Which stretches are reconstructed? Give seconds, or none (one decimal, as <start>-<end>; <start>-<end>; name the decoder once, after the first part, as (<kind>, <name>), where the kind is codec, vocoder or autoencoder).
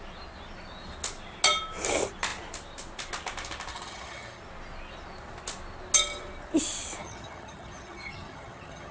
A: 3.7-4.4 (vocoder, HiFi-GAN); 7.0-8.9